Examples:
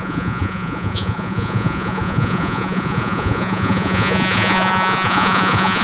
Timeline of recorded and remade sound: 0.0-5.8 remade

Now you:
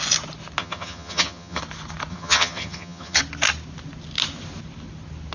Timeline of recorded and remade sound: 0.0-0.6 recorded; 0.6-1.6 remade; 1.6-2.1 recorded; 2.1-3.2 remade; 3.2-5.3 recorded

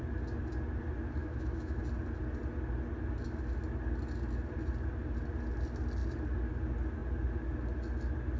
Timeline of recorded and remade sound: 0.0-1.2 recorded; 1.2-1.8 remade; 1.8-8.4 recorded